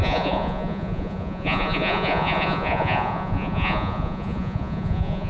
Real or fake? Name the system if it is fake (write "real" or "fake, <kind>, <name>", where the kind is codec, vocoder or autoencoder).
fake, vocoder, Vocos